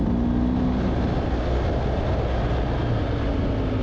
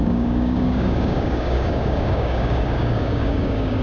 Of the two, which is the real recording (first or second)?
first